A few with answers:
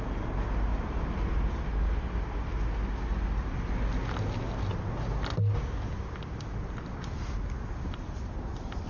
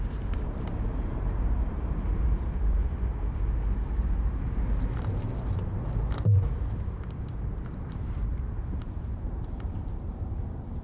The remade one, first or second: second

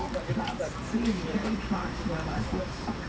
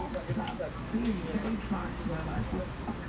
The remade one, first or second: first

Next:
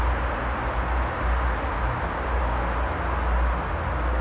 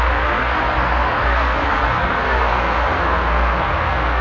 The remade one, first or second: second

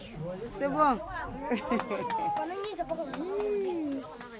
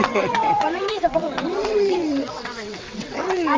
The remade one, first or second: second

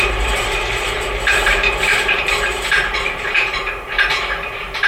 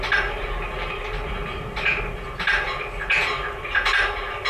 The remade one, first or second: first